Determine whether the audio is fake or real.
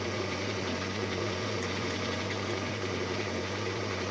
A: fake